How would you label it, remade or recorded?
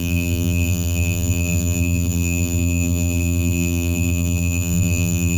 remade